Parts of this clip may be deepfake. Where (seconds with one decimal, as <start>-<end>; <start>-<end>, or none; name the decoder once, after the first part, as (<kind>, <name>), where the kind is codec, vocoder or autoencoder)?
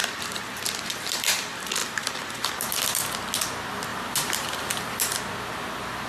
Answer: 0.0-1.2 (vocoder, BigVGAN v2); 3.9-4.7